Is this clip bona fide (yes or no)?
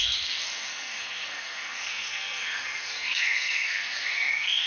no